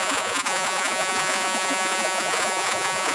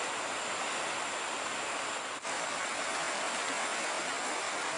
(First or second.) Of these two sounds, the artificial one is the first